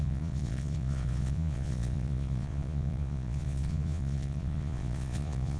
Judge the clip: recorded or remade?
remade